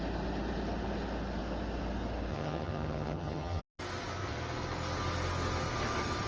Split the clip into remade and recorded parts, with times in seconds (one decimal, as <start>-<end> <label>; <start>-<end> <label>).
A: 0.0-2.3 recorded; 2.3-3.6 remade; 3.6-6.3 recorded